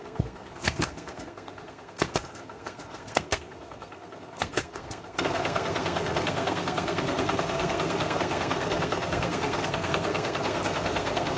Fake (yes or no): yes